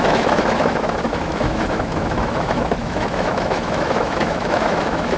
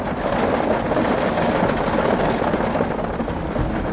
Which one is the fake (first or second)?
first